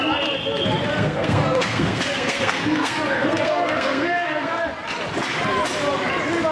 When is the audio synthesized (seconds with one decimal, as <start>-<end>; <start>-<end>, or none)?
0.9-4.6